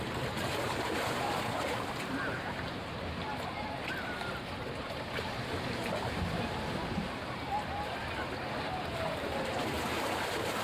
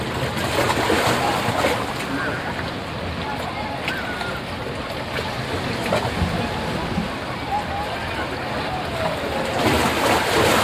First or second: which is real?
second